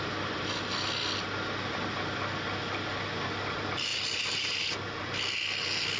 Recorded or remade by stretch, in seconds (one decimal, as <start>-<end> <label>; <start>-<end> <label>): 0.0-3.9 recorded; 3.9-4.6 remade; 4.6-6.0 recorded